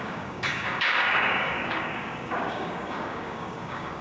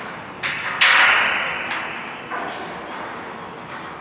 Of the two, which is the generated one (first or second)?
first